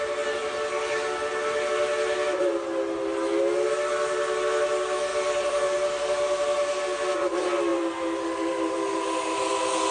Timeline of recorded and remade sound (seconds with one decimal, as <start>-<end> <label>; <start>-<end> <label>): 0.0-5.1 recorded; 5.1-6.8 remade; 6.8-7.7 recorded; 7.7-9.5 remade; 9.5-9.9 recorded